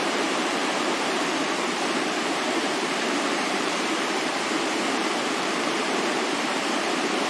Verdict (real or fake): fake